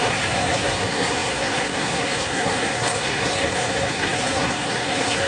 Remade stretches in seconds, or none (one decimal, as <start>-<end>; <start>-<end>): 0.0-5.3